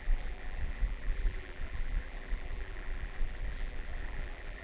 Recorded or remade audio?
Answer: remade